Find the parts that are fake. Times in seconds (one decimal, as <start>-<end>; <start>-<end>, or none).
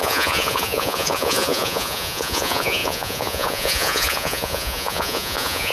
0.0-5.7